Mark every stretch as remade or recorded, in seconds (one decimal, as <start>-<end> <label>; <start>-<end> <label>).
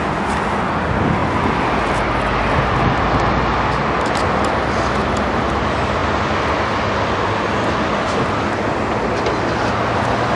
0.0-10.4 recorded